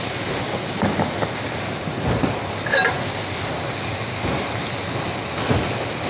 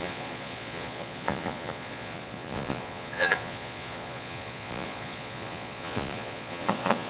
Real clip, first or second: first